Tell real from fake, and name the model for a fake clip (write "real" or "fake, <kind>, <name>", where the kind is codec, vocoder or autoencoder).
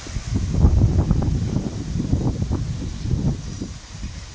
real